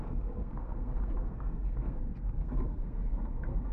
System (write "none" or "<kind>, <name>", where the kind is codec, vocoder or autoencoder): codec, SNAC